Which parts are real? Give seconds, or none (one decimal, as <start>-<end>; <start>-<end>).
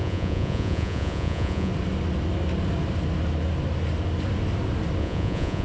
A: 1.7-5.0